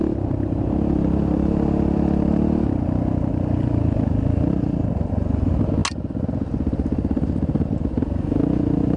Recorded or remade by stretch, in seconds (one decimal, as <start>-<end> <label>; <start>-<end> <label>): 0.0-9.0 recorded